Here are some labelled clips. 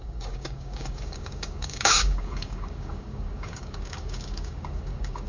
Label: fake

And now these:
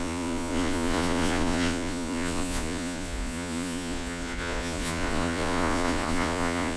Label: fake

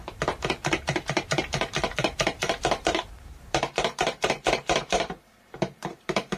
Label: fake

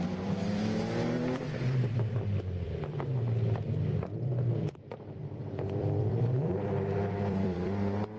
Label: fake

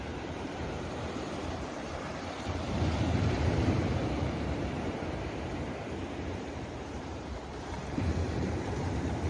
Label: fake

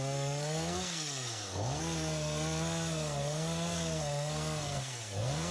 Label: fake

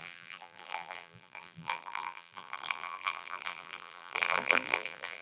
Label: fake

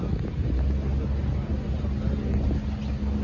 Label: real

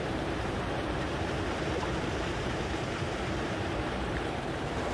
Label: fake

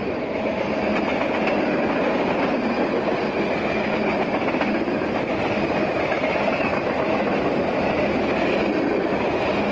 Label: real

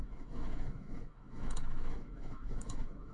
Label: fake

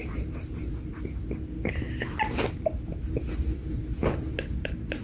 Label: real